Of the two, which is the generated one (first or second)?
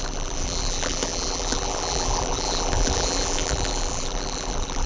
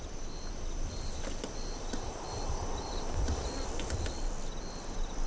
first